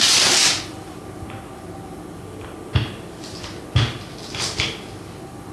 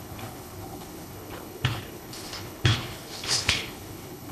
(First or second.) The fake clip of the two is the second